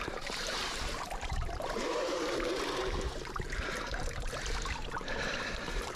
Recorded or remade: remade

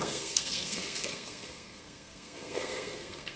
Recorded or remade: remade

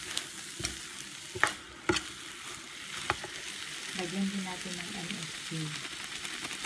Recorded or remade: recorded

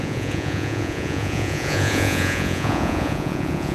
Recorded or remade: remade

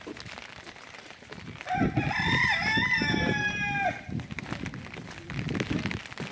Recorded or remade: recorded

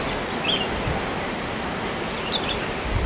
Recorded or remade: recorded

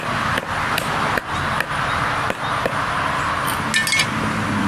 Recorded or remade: recorded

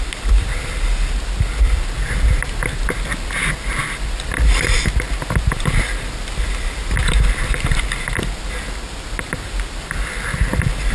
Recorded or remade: recorded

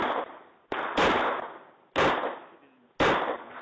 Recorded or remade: recorded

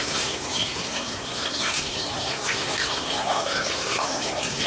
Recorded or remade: remade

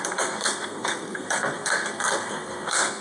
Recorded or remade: remade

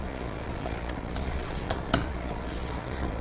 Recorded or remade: remade